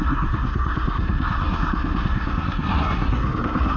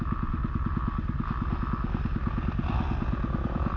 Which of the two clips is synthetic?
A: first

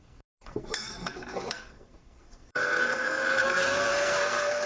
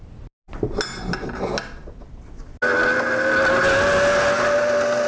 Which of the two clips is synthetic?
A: first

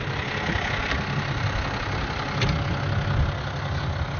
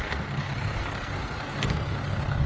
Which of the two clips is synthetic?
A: second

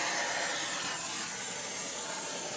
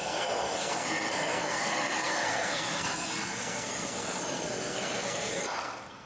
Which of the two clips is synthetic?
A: second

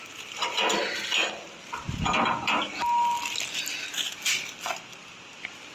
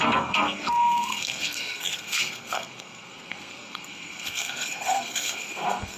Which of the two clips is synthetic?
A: second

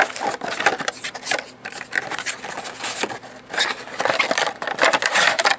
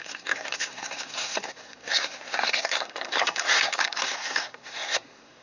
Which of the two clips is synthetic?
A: second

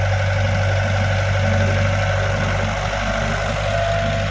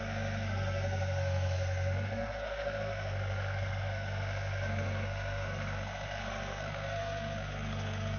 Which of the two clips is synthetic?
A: second